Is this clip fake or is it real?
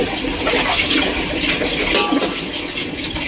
real